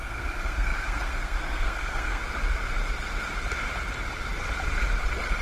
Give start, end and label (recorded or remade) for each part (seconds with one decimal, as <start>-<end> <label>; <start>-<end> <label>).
0.0-2.2 remade; 2.2-5.4 recorded